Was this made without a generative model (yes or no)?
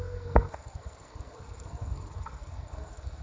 no